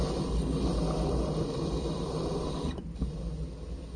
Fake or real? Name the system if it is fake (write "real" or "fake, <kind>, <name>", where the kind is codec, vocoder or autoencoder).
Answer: real